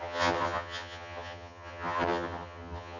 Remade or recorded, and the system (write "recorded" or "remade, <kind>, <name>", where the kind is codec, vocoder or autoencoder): remade, vocoder, HiFi-GAN